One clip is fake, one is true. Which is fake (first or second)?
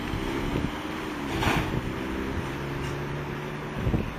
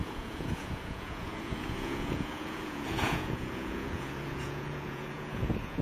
second